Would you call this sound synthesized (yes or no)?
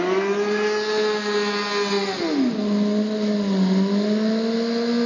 no